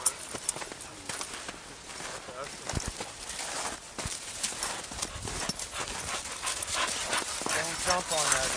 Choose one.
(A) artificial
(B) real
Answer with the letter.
B